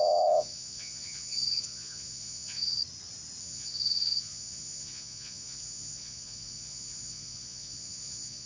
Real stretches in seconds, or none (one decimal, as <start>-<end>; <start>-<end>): 2.8-3.4